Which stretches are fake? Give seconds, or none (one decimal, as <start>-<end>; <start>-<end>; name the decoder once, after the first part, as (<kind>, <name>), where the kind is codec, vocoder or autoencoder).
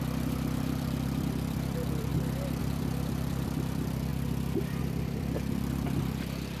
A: 0.0-2.1 (vocoder, BigVGAN v2); 2.6-6.6